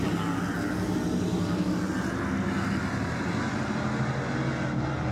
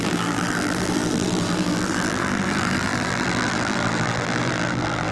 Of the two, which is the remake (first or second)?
second